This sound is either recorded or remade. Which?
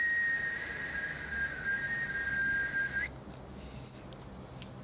recorded